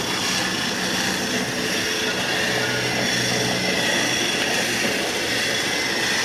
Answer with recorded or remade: recorded